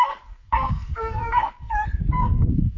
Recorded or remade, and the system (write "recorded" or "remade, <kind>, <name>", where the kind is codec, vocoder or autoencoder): remade, codec, SNAC